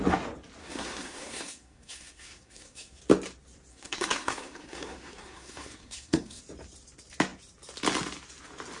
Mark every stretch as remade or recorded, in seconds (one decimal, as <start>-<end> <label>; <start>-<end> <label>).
0.0-0.6 recorded; 0.6-3.0 remade; 3.0-3.7 recorded; 3.7-6.4 remade; 6.4-8.8 recorded